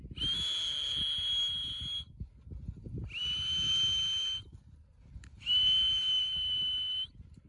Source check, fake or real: real